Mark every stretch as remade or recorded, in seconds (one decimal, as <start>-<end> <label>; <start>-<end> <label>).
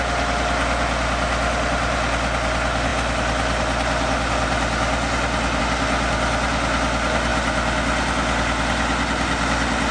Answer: 0.0-9.9 recorded